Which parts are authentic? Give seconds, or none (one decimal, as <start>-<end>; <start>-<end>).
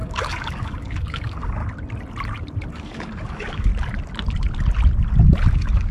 1.6-2.7; 3.7-5.5